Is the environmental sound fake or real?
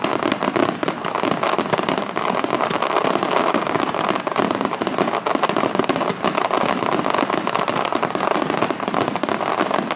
real